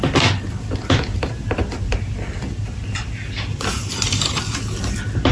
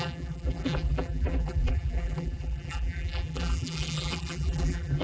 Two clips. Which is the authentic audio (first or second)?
first